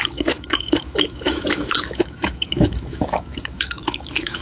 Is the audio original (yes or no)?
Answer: no